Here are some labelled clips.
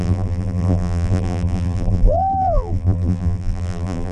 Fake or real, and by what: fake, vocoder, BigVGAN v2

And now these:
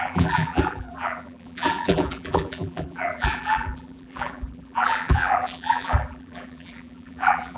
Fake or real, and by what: fake, vocoder, BigVGAN v2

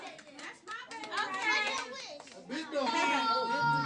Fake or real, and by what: real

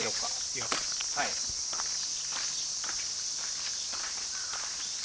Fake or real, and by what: real